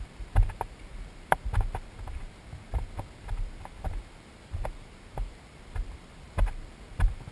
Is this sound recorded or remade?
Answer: remade